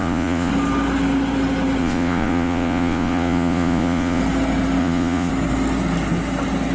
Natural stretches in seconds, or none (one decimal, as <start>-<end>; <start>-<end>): 0.5-1.8; 4.2-4.8; 5.3-6.7